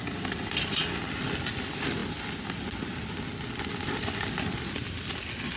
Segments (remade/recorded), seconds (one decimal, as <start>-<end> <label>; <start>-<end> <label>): 0.0-5.6 recorded